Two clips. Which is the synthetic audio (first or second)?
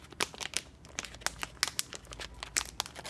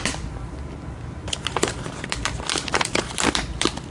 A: second